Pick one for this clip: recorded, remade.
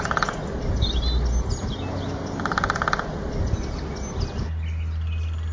recorded